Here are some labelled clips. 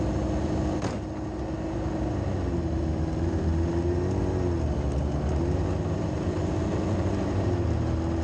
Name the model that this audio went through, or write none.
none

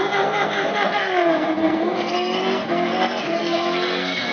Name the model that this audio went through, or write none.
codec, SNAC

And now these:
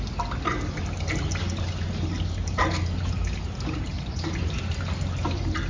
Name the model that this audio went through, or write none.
none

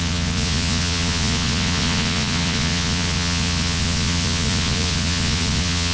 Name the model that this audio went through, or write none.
vocoder, Vocos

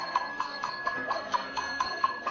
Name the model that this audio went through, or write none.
codec, SNAC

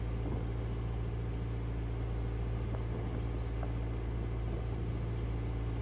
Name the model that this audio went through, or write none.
none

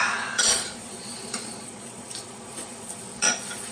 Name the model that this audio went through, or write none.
vocoder, Vocos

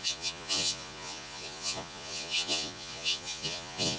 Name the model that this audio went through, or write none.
vocoder, Vocos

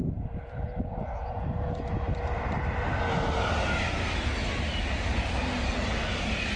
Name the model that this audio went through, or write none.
none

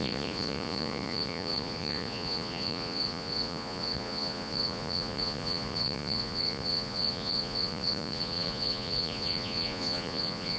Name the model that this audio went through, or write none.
vocoder, Vocos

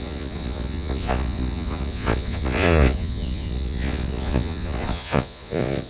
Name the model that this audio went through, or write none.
vocoder, Vocos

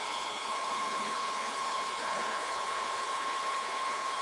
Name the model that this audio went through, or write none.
codec, HILCodec